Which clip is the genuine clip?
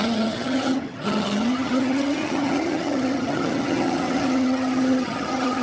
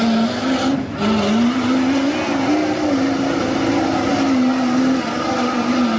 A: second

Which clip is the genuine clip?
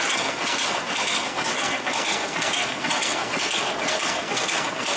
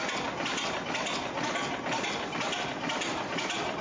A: second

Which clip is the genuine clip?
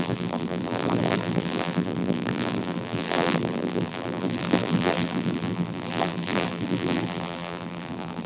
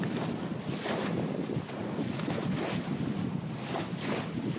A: second